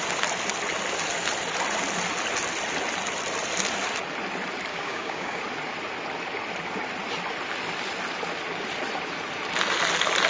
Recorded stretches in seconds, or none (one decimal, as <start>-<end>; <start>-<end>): 0.0-4.7; 5.4-10.3